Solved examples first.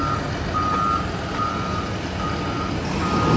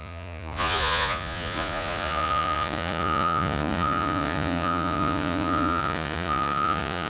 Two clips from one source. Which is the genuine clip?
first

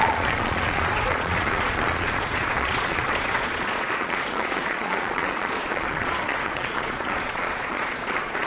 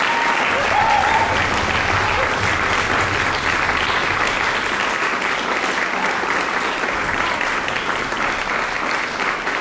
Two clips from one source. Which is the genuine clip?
second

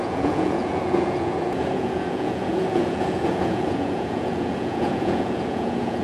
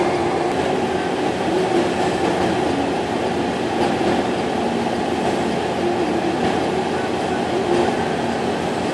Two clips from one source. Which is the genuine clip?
second